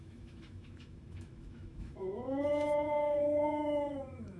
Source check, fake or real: fake